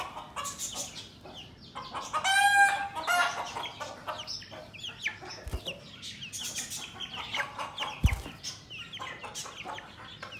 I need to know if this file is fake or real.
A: real